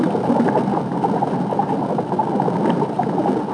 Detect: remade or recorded recorded